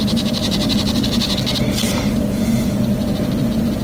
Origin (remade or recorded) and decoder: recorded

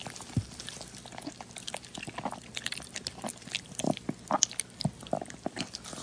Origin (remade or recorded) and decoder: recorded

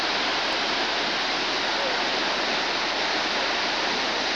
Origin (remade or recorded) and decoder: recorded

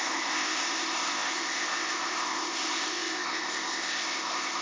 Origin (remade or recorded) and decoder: remade, codec, ZipCodec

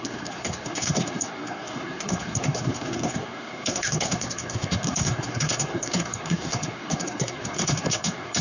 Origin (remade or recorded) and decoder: remade, codec, SNAC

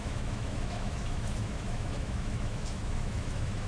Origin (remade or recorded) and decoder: remade, autoencoder, DAC-VAE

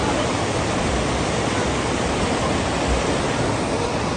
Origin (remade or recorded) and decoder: recorded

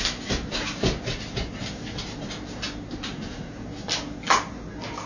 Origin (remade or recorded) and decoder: recorded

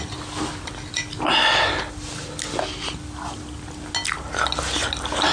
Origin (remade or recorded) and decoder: recorded